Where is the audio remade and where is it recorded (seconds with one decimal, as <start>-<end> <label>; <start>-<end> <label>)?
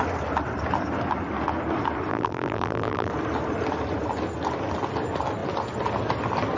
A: 0.0-2.1 recorded; 2.1-3.1 remade; 3.1-6.6 recorded